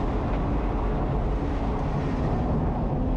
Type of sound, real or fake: real